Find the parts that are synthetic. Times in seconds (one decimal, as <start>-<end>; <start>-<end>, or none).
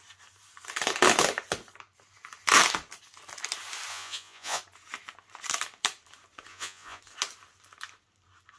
3.9-4.6; 6.5-7.0